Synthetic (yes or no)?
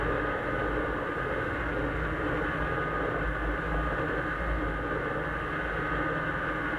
no